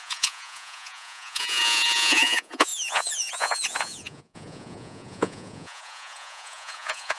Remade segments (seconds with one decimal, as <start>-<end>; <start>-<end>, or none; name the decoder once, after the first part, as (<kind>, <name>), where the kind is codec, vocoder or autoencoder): 0.0-7.2 (vocoder, Vocos)